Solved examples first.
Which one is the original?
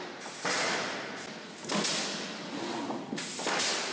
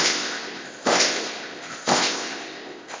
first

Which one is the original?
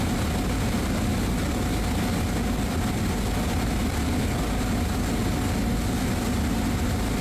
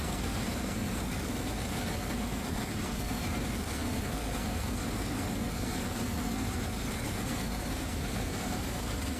first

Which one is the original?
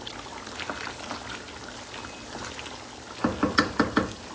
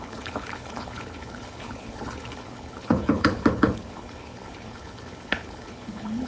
first